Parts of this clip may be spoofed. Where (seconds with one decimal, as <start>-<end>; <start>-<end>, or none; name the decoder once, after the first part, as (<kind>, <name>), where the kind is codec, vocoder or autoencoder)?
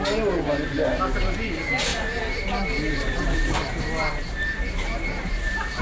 1.9-5.8 (vocoder, BigVGAN v2)